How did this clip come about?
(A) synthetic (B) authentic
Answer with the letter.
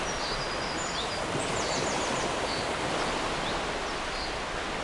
B